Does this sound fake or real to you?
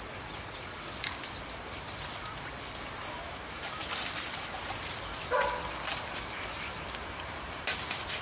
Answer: real